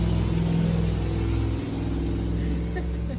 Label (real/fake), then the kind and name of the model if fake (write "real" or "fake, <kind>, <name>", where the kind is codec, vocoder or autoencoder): real